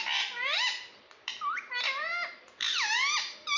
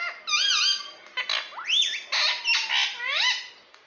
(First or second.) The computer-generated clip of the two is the first